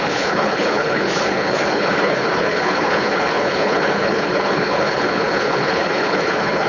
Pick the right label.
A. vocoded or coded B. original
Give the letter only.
A